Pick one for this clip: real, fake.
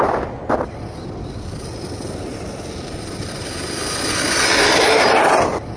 real